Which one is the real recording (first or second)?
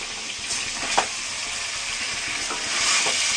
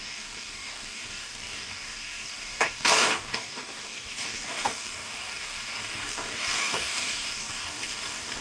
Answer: first